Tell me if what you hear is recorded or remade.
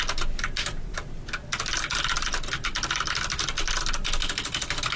recorded